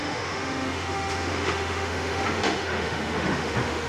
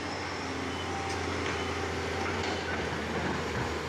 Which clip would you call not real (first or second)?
first